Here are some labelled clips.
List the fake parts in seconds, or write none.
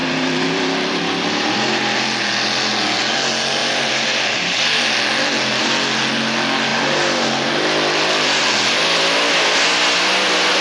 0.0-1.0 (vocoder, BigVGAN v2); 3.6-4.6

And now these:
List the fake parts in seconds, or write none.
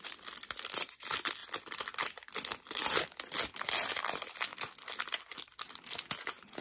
none